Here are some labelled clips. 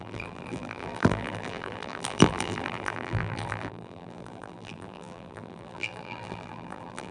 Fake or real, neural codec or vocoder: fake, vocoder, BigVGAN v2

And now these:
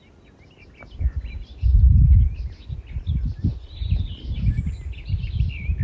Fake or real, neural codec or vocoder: real